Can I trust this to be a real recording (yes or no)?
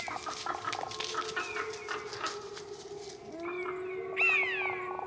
yes